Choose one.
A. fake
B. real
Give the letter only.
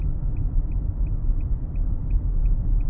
B